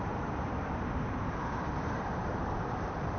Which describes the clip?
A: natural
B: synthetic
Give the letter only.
B